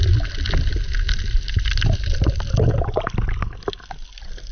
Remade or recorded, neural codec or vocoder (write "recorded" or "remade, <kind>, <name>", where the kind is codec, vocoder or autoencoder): recorded